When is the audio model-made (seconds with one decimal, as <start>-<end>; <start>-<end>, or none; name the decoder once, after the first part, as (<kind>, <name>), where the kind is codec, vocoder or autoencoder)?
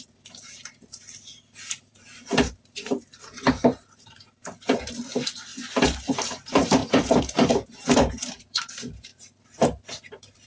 0.0-5.5 (vocoder, BigVGAN v2); 6.0-9.1; 10.1-10.5